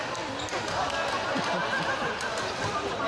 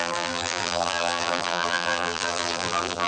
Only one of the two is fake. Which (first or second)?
second